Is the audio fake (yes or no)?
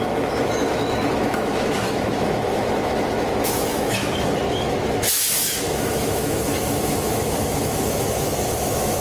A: yes